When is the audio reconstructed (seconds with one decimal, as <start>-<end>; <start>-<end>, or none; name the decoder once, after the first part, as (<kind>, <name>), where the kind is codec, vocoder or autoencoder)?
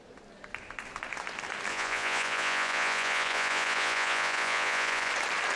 1.7-5.1 (vocoder, Vocos)